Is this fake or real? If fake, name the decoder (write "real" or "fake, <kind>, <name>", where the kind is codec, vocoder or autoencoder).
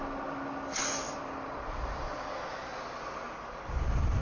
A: real